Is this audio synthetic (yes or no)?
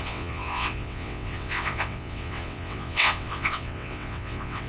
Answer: yes